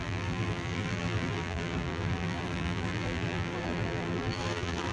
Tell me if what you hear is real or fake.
fake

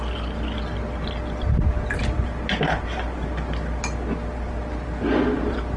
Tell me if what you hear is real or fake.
real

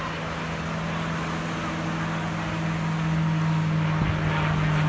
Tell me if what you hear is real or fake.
real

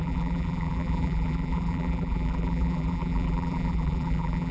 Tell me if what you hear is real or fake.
fake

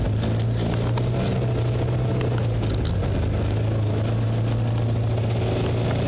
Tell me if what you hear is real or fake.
real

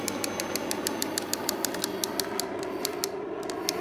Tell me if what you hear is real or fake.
real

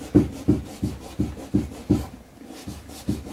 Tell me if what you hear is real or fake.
real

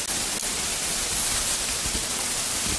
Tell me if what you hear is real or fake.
real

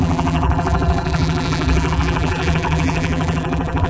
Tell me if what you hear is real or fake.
fake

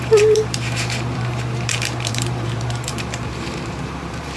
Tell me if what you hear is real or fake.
fake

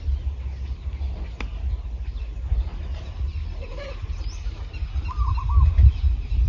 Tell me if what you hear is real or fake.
real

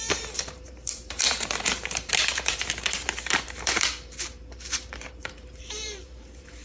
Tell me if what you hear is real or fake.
fake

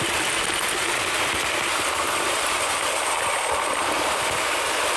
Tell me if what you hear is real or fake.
real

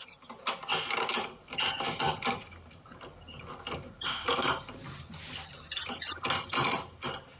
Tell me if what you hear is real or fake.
real